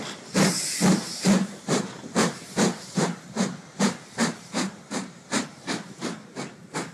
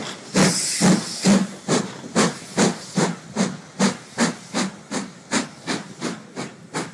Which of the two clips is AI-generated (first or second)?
first